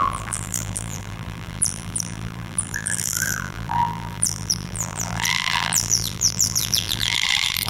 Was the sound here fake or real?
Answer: fake